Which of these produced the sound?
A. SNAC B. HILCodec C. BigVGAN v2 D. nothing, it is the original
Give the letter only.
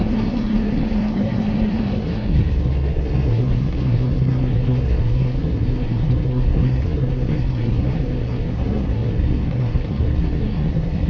A